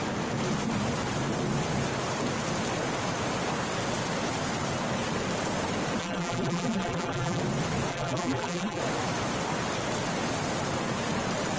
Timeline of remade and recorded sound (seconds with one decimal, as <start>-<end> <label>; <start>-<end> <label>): 0.0-6.0 recorded; 6.0-7.4 remade; 7.4-7.9 recorded; 7.9-8.8 remade; 8.8-11.6 recorded